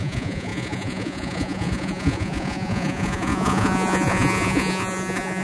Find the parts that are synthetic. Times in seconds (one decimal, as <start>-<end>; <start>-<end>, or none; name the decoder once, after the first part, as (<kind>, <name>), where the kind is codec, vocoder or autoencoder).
0.0-5.4 (vocoder, Vocos)